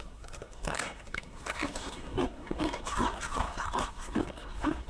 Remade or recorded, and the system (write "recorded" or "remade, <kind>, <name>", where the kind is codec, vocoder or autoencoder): remade, codec, SNAC